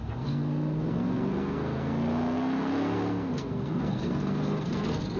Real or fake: fake